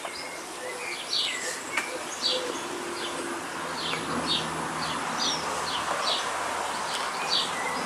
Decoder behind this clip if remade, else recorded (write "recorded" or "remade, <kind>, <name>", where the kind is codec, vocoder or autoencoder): recorded